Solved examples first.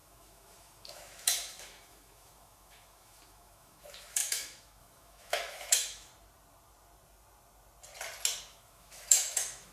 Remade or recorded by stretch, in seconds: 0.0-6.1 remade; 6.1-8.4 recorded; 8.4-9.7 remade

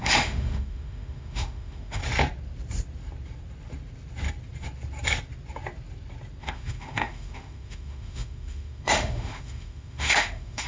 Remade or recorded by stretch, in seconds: 0.0-2.0 remade; 2.0-6.4 recorded; 6.4-10.7 remade